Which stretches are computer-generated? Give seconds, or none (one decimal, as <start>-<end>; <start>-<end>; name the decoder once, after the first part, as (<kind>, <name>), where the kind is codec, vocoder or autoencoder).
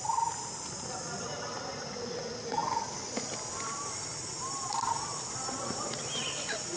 none